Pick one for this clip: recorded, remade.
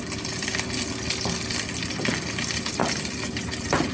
recorded